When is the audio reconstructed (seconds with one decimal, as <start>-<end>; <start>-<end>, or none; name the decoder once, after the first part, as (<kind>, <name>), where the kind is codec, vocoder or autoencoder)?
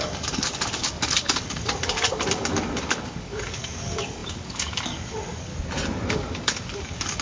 0.0-5.5 (codec, DAC); 6.1-7.2